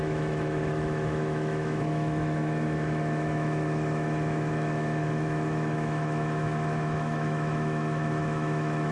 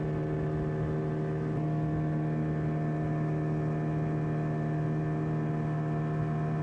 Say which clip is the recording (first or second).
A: second